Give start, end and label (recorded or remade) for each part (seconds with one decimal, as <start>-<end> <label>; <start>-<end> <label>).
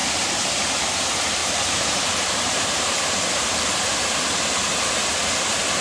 0.0-0.8 remade; 0.8-1.4 recorded; 1.4-4.9 remade; 4.9-5.8 recorded